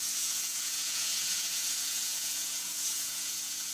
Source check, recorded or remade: remade